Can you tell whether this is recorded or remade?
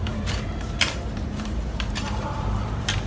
remade